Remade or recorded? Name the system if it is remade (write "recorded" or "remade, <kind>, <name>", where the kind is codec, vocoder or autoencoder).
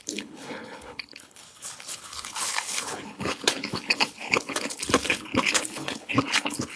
remade, codec, HILCodec